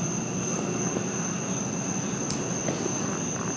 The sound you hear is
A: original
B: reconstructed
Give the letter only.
A